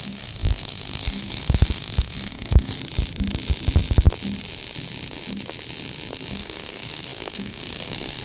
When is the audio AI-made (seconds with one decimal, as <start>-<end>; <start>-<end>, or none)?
0.0-2.8; 6.3-8.2